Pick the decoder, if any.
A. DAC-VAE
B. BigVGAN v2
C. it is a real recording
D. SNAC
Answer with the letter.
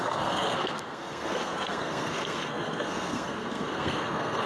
D